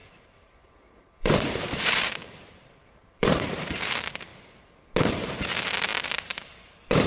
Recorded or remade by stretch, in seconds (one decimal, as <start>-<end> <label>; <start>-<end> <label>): 0.0-4.3 remade; 4.3-5.1 recorded; 5.1-7.1 remade